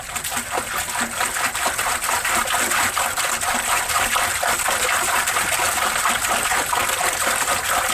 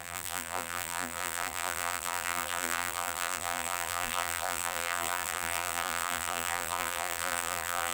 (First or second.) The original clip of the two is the first